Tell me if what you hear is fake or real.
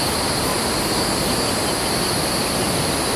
real